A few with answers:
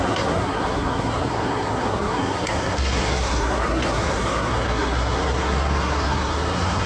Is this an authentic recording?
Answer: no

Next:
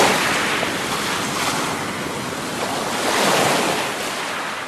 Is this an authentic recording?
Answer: yes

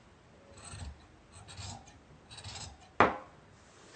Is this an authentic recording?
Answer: yes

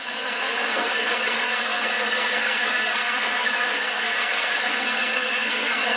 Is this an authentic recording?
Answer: no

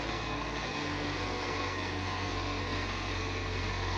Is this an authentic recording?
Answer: no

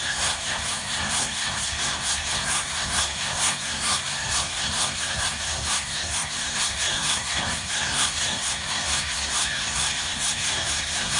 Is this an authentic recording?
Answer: no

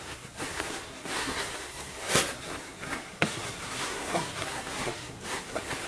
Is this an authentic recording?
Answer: no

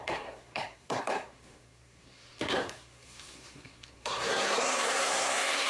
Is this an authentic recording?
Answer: no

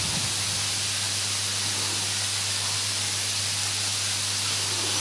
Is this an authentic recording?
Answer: yes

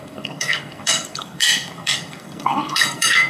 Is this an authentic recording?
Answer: no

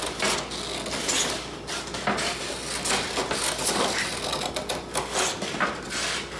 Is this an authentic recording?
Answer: yes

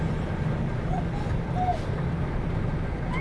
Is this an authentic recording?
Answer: yes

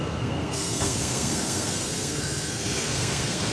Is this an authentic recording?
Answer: no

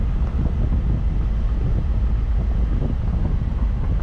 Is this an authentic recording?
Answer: yes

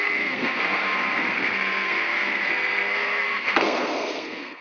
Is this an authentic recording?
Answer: no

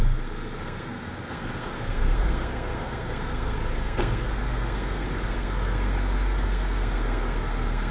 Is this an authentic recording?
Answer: no